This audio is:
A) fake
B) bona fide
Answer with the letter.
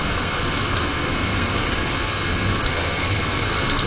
A